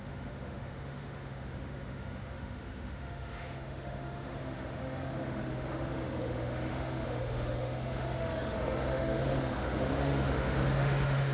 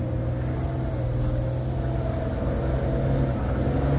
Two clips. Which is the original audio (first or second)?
second